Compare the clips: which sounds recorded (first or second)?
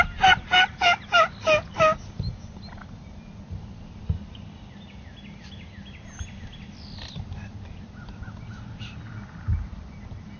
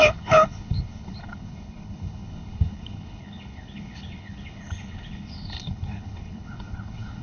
first